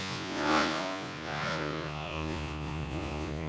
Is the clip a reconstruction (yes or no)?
yes